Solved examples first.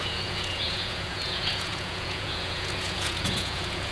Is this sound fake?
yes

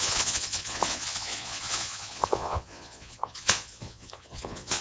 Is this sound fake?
yes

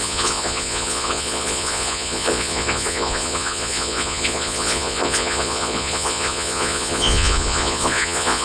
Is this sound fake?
yes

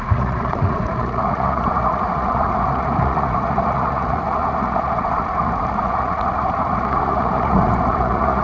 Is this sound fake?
yes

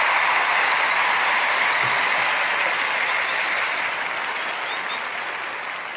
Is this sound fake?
no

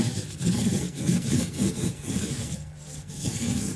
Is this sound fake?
yes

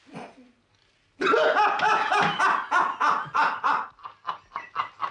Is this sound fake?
no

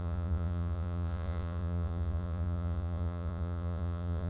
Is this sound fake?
yes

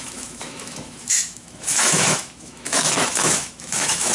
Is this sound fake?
yes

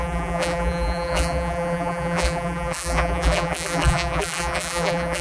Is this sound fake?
yes